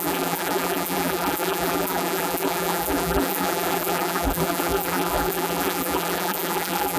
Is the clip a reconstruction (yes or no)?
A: yes